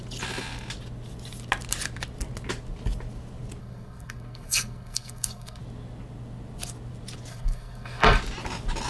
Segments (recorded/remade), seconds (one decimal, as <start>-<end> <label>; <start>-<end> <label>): 0.0-3.6 recorded; 3.6-5.6 remade; 5.6-7.3 recorded; 7.3-8.2 remade; 8.2-8.9 recorded